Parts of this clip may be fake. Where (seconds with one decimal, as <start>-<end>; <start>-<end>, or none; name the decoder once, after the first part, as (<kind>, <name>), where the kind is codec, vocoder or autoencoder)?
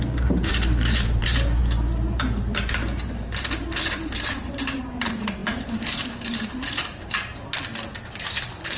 0.0-7.3 (vocoder, BigVGAN v2); 8.2-8.8